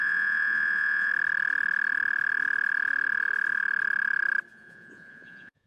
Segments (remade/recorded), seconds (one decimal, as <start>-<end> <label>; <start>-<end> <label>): 0.0-1.1 remade; 1.1-4.5 recorded; 4.5-5.7 remade

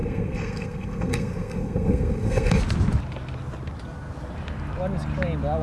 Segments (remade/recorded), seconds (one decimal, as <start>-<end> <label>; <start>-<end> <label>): 0.0-2.6 remade; 2.6-5.6 recorded

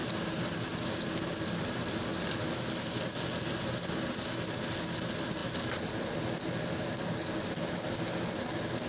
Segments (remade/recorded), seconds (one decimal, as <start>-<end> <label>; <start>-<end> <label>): 0.0-8.9 recorded

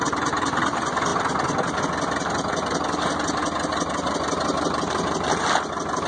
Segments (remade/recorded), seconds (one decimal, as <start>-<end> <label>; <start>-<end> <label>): 0.0-6.1 recorded

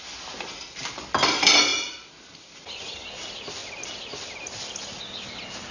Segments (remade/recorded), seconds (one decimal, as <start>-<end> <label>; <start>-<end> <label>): 0.0-5.7 recorded

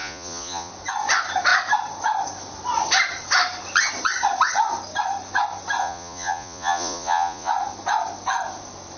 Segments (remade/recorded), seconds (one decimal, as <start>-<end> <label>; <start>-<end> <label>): 0.0-0.7 remade; 0.7-5.8 recorded; 5.8-7.5 remade; 7.5-9.0 recorded

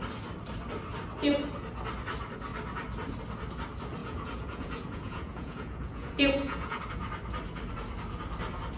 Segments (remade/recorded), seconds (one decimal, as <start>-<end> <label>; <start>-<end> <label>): 0.0-4.0 recorded; 4.0-6.8 remade; 6.8-8.8 recorded